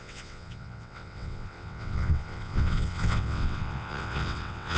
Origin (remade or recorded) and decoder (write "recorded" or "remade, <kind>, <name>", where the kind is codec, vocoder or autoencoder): remade, vocoder, WaveNeXt